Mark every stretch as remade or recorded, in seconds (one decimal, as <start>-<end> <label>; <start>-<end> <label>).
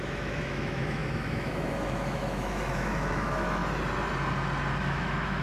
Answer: 0.0-3.6 remade; 3.6-4.8 recorded; 4.8-5.4 remade